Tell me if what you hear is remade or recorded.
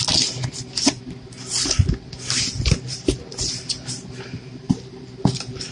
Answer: recorded